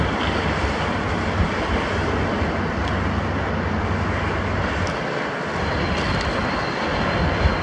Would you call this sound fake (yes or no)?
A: no